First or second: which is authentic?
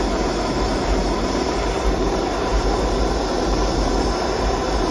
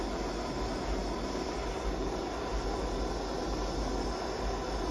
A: second